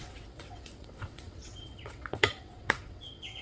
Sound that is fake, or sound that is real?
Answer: fake